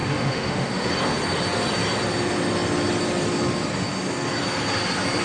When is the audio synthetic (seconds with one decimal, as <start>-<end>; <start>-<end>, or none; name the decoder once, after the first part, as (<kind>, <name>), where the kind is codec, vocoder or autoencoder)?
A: 0.0-0.9 (autoencoder, DAC-VAE)